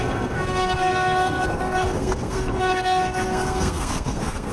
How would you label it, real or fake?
fake